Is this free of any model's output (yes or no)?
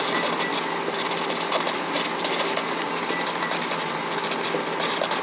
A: yes